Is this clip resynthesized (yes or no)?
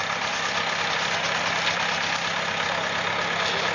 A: no